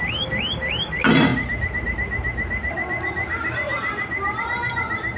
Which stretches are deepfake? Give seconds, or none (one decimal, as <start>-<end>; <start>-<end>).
none